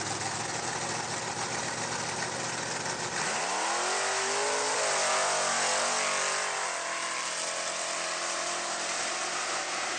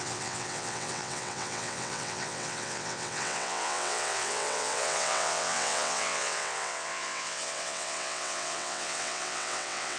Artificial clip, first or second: second